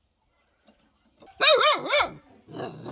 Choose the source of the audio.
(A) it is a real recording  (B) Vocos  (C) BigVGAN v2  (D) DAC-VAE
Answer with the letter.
A